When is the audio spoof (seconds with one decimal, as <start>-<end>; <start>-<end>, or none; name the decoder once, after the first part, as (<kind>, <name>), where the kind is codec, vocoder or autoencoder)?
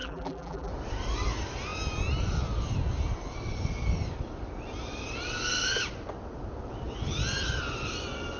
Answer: 0.0-0.7 (vocoder, BigVGAN v2)